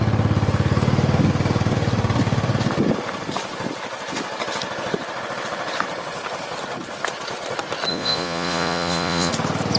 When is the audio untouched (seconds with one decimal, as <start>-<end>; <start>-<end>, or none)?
0.0-7.9; 9.3-9.8